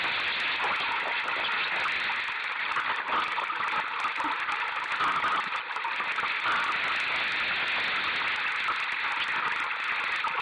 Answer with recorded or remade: recorded